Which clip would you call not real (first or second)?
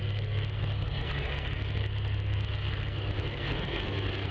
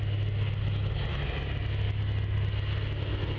first